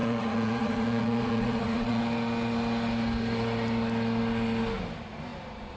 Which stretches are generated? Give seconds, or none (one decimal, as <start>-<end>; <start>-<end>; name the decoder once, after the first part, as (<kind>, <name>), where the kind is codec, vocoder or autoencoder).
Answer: 0.0-2.0 (vocoder, Vocos)